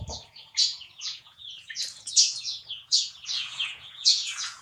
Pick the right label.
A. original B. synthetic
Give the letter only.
B